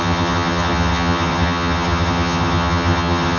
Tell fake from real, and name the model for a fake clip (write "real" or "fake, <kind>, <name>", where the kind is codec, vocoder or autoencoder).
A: fake, vocoder, HiFi-GAN